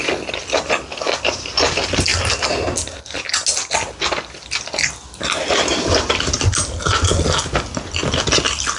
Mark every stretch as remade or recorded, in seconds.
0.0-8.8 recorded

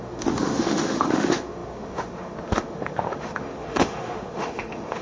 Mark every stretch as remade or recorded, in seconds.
0.0-5.0 remade